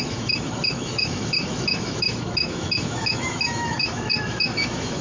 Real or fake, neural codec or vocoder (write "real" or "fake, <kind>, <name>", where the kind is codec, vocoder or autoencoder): fake, autoencoder, DAC-VAE